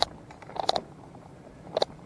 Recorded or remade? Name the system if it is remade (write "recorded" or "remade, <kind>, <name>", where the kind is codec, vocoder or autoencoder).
recorded